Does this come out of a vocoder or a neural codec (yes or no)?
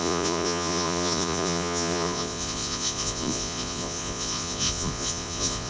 yes